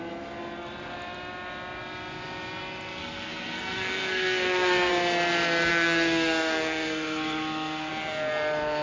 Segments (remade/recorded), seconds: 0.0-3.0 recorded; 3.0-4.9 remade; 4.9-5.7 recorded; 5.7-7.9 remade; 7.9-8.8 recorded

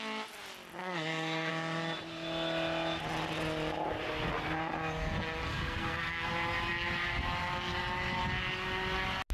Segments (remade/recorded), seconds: 0.0-0.8 recorded; 0.8-1.5 remade; 1.5-5.5 recorded; 5.5-6.3 remade; 6.3-9.3 recorded

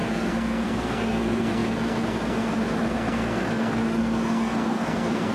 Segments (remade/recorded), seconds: 0.0-5.3 remade

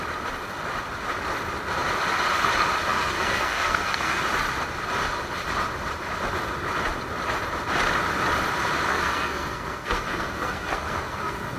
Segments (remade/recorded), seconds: 0.0-2.9 recorded; 2.9-4.2 remade; 4.2-8.9 recorded; 8.9-11.6 remade

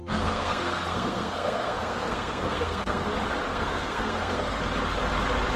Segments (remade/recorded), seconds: 0.0-3.1 remade; 3.1-3.5 recorded; 3.5-4.6 remade; 4.6-5.6 recorded

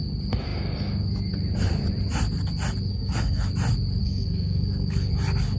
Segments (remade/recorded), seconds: 0.0-2.9 recorded; 2.9-3.5 remade; 3.5-4.0 recorded; 4.0-5.1 remade; 5.1-5.6 recorded

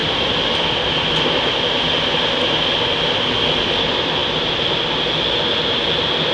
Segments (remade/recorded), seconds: 0.0-6.3 recorded

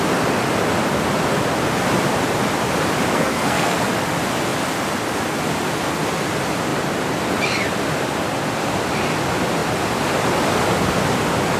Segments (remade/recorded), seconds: 0.0-3.1 recorded; 3.1-3.8 remade; 3.8-11.6 recorded